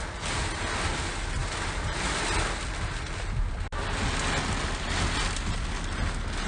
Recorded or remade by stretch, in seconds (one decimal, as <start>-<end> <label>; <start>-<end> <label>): 0.0-6.5 recorded